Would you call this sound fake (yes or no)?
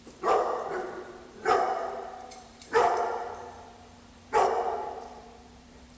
yes